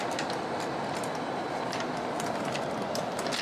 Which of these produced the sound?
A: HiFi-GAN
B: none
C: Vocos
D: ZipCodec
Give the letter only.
B